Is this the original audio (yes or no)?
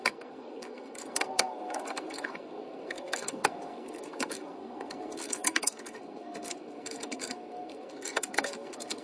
no